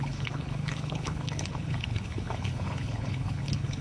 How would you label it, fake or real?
fake